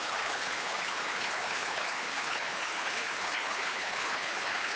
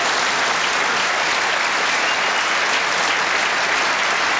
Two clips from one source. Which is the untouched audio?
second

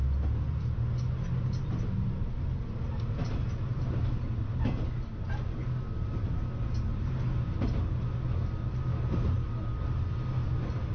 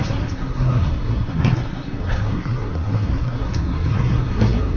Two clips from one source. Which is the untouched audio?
first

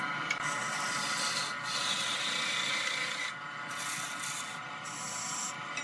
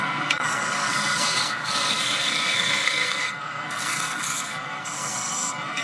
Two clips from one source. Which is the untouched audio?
first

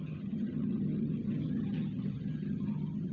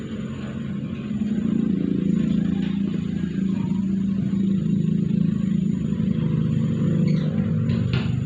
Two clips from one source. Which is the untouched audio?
second